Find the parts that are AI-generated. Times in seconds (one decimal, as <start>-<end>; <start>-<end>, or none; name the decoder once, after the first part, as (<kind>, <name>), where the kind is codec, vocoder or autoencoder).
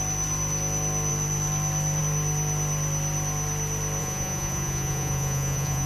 4.0-5.9 (vocoder, Vocos)